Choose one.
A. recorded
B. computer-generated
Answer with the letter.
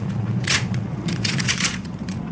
B